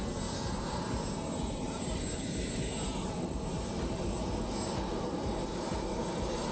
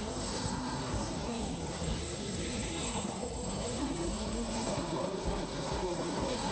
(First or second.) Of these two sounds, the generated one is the second